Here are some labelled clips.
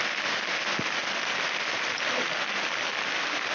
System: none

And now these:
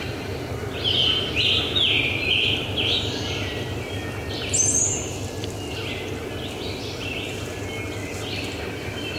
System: none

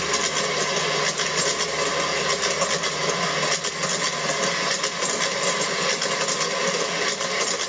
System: none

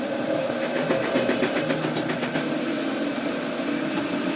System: none